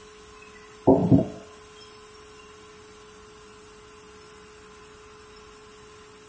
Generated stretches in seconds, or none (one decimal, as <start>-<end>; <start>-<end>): none

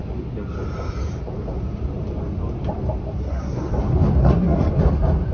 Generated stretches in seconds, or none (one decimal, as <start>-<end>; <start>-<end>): 3.2-3.7; 4.2-4.7

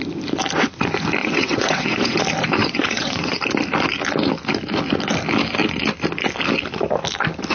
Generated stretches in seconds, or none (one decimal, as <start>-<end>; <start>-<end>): 1.2-2.2; 2.6-3.4

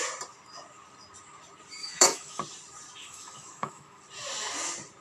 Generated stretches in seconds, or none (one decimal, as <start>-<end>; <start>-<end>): 1.8-2.4; 3.0-4.0

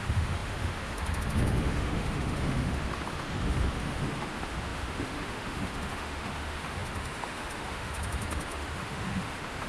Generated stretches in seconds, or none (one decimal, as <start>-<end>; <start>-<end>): 0.0-9.7

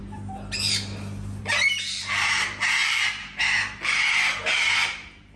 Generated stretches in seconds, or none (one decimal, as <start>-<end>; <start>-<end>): 1.4-2.4; 2.8-3.4

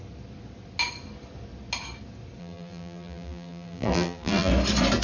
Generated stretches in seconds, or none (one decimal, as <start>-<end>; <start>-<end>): 2.4-4.5

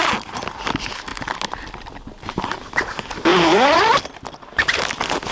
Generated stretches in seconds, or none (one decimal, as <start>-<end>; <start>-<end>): none